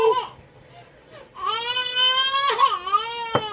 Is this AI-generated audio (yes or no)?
no